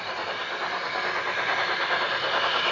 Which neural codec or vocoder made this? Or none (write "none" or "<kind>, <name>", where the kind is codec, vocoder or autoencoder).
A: none